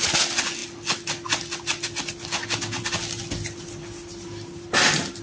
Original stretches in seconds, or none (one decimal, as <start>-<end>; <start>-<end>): 0.0-5.2

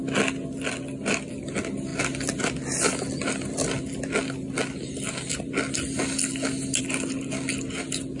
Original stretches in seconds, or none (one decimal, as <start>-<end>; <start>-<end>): 0.0-8.2